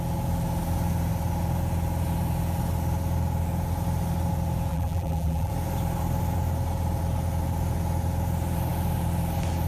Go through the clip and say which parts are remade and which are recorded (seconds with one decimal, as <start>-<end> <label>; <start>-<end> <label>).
0.0-4.7 recorded; 4.7-5.5 remade; 5.5-9.7 recorded

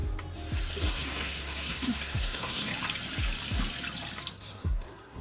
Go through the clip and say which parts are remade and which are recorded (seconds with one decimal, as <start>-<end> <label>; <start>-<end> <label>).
0.0-0.8 recorded; 0.8-2.7 remade; 2.7-4.3 recorded; 4.3-5.2 remade

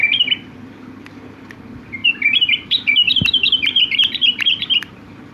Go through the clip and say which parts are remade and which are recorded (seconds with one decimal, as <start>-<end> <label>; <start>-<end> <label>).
0.0-2.0 recorded; 2.0-5.3 remade

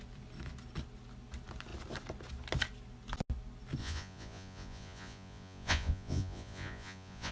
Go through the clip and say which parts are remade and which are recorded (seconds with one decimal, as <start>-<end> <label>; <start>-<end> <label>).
0.0-3.8 recorded; 3.8-7.3 remade